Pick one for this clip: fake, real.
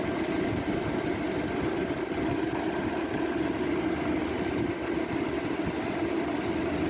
real